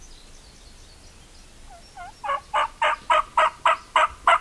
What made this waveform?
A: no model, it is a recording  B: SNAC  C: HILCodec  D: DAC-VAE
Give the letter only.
A